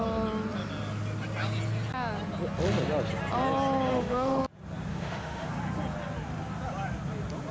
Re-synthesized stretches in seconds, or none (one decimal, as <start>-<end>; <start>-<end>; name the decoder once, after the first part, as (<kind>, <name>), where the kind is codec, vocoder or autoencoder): 3.9-4.4 (autoencoder, DAC-VAE); 4.9-5.5